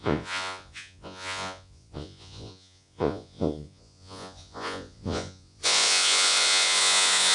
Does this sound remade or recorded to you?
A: remade